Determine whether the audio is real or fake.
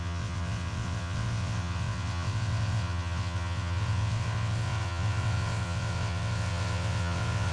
fake